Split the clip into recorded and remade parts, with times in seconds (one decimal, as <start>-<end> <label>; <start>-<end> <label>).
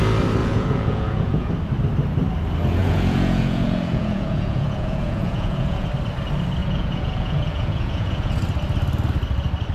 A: 0.0-0.4 recorded; 0.4-1.5 remade; 1.5-2.8 recorded; 2.8-5.9 remade; 5.9-6.6 recorded; 6.6-8.3 remade; 8.3-9.7 recorded